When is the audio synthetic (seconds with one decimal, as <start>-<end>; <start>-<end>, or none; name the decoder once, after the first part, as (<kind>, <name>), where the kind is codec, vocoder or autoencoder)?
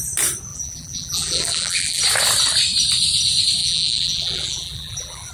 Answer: 0.5-2.0 (vocoder, BigVGAN v2); 3.6-5.3